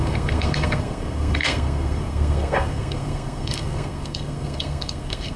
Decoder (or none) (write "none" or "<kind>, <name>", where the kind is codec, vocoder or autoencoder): codec, SNAC